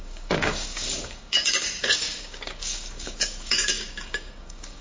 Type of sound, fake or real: fake